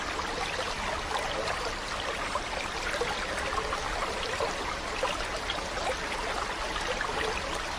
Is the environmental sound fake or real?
real